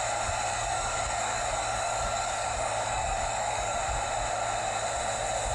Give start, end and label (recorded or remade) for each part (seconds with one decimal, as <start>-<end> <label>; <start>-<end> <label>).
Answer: 0.0-0.5 recorded; 0.5-3.8 remade; 3.8-5.5 recorded